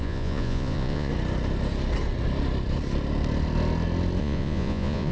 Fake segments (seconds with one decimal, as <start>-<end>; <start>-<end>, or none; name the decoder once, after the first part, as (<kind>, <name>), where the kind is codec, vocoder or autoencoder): 0.0-1.1 (vocoder, Vocos); 4.2-5.1